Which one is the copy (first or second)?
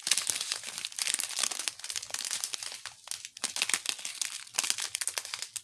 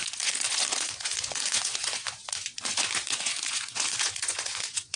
second